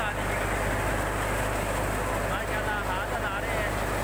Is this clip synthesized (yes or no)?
no